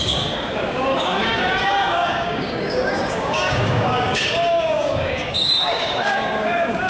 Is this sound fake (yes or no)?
yes